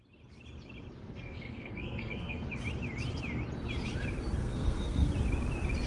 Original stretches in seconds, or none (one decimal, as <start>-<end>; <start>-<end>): 0.0-1.0; 2.5-4.4; 5.1-5.9